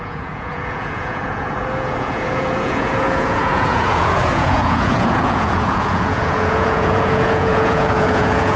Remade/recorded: remade